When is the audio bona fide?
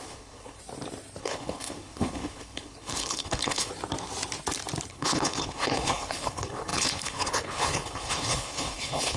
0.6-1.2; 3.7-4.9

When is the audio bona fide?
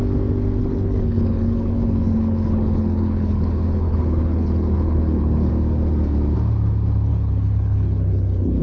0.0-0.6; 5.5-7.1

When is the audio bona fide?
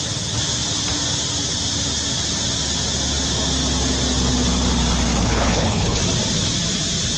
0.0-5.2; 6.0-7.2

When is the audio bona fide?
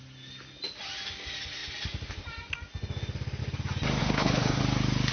0.0-4.0; 4.6-5.1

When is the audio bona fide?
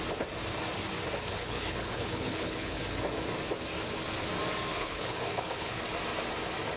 0.0-1.3; 2.8-4.7; 5.8-6.8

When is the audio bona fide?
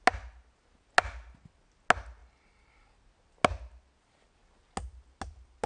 0.0-5.7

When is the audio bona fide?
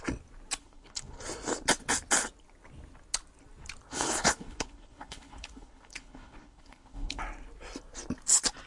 0.0-0.6; 1.2-3.9; 7.2-8.7